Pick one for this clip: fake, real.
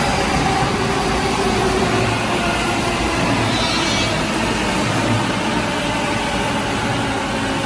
real